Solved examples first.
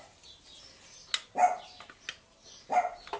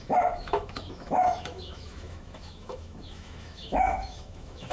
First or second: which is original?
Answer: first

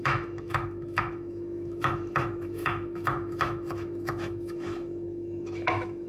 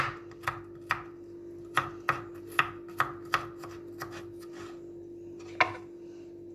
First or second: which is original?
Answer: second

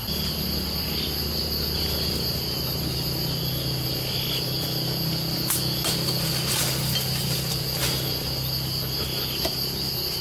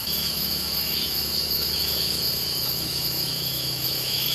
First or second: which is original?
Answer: first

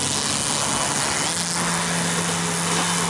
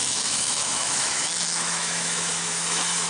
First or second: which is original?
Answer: first